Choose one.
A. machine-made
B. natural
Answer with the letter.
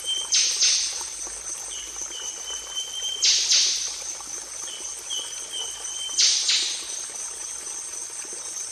B